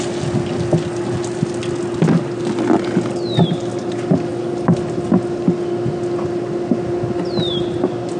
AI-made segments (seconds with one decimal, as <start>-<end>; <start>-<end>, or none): none